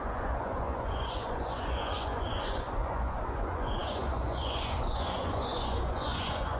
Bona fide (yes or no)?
no